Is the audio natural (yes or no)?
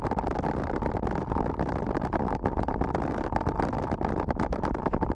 yes